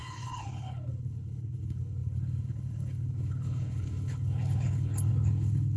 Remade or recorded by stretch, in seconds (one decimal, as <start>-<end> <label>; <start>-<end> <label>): 0.0-5.8 remade